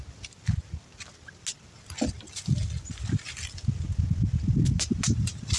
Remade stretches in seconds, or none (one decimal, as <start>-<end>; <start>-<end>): none

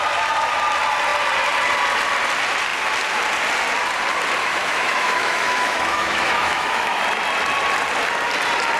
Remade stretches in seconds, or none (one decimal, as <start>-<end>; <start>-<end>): 4.4-7.0

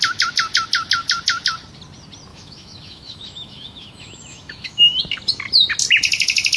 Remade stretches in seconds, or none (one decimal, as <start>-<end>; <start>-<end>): 2.3-5.0

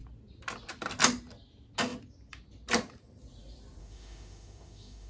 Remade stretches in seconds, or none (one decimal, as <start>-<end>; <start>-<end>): 3.8-5.1

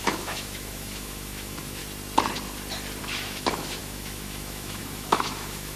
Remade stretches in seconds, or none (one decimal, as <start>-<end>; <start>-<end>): 0.0-1.8; 3.0-5.8

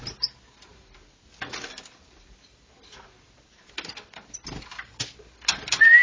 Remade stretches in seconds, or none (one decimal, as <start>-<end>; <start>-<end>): none

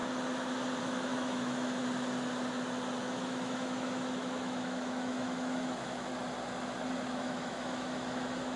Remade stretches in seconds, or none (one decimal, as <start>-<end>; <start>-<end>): 0.8-1.8; 3.0-6.1; 7.1-8.6